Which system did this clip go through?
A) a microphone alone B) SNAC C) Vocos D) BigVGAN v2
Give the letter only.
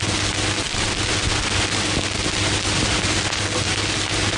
A